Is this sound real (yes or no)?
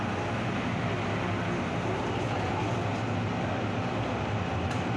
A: yes